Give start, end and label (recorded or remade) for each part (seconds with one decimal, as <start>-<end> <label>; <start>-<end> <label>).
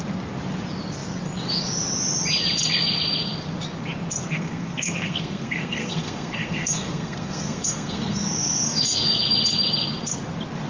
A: 0.0-4.2 recorded; 4.2-9.2 remade; 9.2-10.7 recorded